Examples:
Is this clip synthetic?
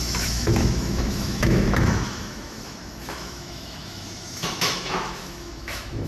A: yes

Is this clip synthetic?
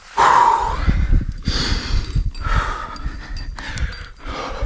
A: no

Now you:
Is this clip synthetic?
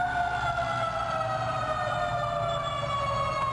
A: no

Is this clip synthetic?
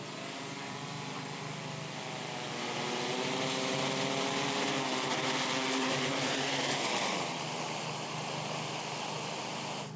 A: no